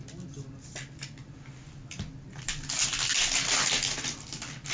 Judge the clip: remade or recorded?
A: recorded